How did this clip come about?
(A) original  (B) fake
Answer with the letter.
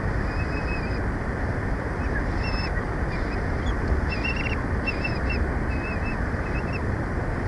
A